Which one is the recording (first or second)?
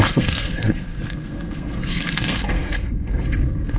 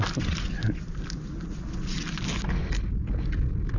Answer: second